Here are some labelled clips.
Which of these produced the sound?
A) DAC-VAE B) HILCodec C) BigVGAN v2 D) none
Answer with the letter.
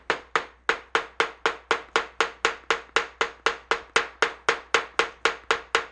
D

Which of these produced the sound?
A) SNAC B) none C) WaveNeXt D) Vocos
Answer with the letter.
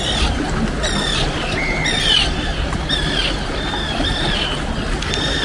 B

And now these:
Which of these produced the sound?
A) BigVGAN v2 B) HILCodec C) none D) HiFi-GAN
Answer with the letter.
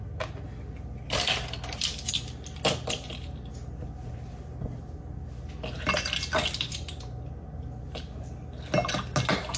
C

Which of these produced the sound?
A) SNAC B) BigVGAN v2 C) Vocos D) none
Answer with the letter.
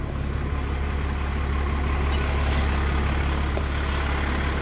D